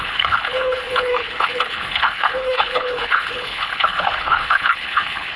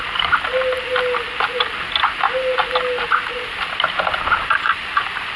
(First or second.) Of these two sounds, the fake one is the first